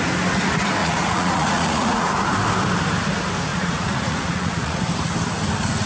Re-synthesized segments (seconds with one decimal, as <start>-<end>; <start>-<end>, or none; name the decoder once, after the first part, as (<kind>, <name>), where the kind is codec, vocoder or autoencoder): 0.8-2.1 (vocoder, Vocos); 3.5-4.8

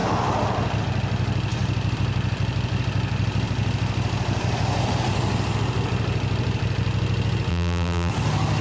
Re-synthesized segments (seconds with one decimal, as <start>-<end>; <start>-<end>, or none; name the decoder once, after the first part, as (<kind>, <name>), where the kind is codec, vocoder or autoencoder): 7.5-8.1 (vocoder, BigVGAN v2)

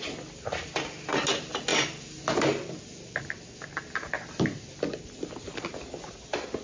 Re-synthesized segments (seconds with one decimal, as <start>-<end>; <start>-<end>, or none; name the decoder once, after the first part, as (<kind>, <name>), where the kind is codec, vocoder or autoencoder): 1.7-3.2 (vocoder, BigVGAN v2)

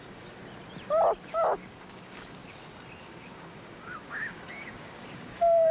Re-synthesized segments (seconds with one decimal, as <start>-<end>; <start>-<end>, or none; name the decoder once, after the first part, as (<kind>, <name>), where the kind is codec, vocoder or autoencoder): 0.0-0.4 (codec, DAC); 1.2-2.4; 3.0-5.7

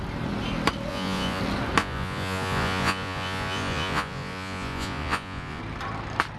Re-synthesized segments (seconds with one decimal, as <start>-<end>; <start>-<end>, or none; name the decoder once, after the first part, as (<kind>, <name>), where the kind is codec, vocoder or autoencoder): 0.9-1.4 (vocoder, Vocos); 1.8-5.6

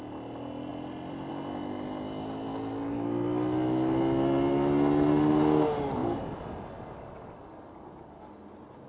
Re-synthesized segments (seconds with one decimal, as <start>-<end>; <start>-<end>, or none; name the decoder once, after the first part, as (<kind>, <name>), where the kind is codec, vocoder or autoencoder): 0.7-1.3 (vocoder, BigVGAN v2); 6.0-6.5